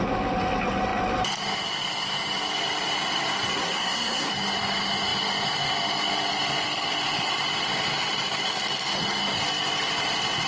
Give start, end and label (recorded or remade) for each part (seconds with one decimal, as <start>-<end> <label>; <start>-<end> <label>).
0.0-3.5 recorded; 3.5-4.3 remade; 4.3-10.5 recorded